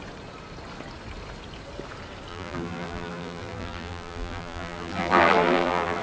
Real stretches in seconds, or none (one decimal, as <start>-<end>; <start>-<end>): 0.0-2.3